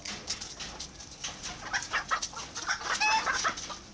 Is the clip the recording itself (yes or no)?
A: yes